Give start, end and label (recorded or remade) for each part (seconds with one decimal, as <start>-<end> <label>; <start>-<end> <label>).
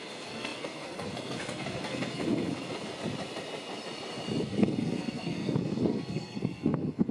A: 0.0-3.0 remade; 3.0-4.4 recorded; 4.4-7.1 remade